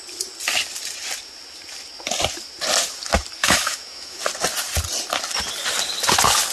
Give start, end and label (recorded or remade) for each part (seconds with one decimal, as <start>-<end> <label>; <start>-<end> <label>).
0.0-3.4 recorded; 3.4-4.2 remade; 4.2-6.5 recorded